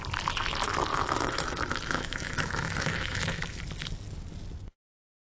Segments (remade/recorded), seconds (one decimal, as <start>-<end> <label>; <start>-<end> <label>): 0.0-0.9 recorded; 0.9-3.6 remade; 3.6-5.2 recorded